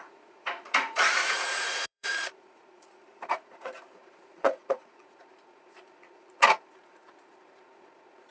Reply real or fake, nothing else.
fake